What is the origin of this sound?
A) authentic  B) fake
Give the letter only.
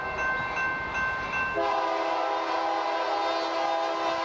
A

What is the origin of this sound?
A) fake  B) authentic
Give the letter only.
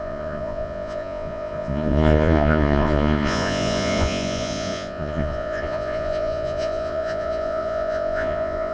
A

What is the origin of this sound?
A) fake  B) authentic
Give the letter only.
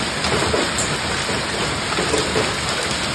B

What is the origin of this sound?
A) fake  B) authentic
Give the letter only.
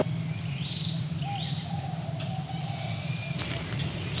B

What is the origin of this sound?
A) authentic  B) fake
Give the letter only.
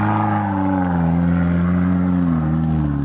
A